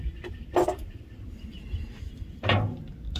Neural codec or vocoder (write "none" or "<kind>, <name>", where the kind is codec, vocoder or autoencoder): none